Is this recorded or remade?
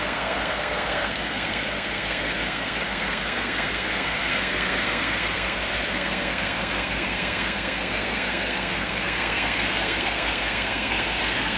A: remade